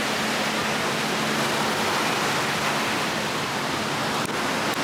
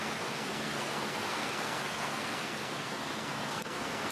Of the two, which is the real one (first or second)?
first